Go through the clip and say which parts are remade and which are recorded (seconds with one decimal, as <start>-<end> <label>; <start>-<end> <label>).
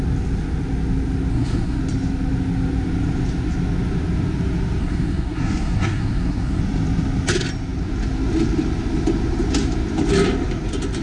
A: 0.0-1.3 recorded; 1.3-1.8 remade; 1.8-4.8 recorded; 4.8-6.6 remade; 6.6-11.0 recorded